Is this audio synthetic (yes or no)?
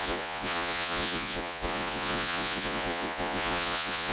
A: yes